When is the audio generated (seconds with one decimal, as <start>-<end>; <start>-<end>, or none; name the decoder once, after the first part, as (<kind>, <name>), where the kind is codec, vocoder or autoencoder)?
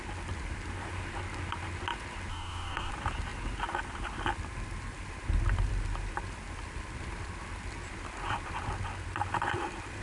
2.3-2.9 (codec, DAC)